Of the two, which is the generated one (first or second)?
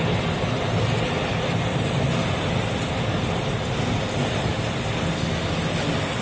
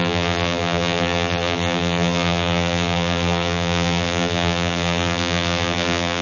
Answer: second